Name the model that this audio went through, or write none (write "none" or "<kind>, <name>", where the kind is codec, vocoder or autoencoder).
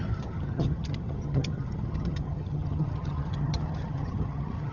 vocoder, HiFi-GAN